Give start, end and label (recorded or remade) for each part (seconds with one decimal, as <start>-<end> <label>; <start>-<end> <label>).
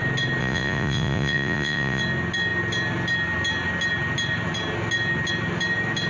0.0-0.4 recorded; 0.4-2.0 remade; 2.0-6.1 recorded